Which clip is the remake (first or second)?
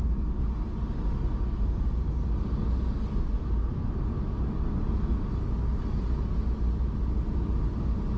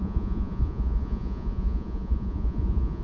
second